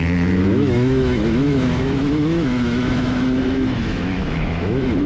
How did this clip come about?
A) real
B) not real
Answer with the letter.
B